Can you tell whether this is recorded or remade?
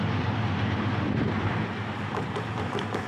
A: remade